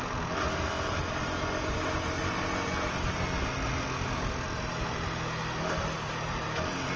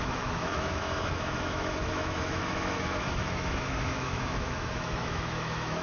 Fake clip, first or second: second